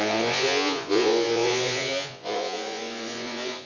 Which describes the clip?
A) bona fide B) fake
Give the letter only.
B